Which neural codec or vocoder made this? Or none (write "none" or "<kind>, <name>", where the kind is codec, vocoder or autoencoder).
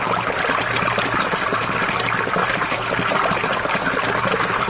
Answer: none